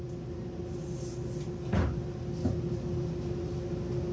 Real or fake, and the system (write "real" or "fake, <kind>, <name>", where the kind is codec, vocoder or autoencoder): real